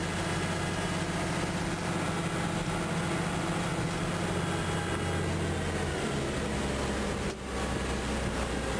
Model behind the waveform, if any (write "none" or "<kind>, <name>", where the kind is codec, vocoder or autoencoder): none